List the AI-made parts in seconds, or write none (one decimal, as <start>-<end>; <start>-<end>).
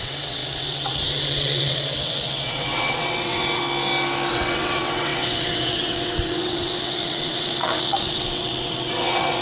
0.0-3.6; 4.3-9.4